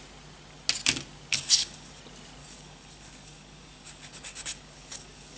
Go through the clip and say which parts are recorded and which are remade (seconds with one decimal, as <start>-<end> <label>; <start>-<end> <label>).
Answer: 0.0-1.3 recorded; 1.3-2.0 remade; 2.0-2.4 recorded; 2.4-5.4 remade

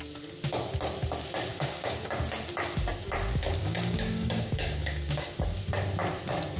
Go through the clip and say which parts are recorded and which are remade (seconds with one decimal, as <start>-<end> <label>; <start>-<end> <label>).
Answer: 0.0-1.5 recorded; 1.5-2.2 remade; 2.2-3.6 recorded; 3.6-5.4 remade; 5.4-6.6 recorded

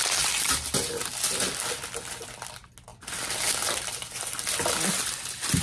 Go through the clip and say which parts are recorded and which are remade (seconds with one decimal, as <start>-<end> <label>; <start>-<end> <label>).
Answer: 0.0-5.6 recorded